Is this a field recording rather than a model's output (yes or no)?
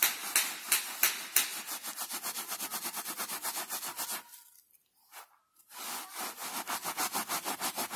yes